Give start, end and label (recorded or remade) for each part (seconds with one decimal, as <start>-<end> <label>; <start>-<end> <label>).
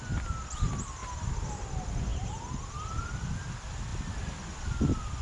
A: 0.0-1.0 recorded; 1.0-1.5 remade; 1.5-2.1 recorded; 2.1-2.8 remade; 2.8-5.2 recorded